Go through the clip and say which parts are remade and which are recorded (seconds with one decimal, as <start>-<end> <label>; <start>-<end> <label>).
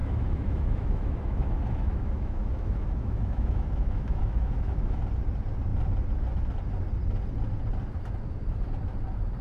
0.0-5.0 remade; 5.0-9.4 recorded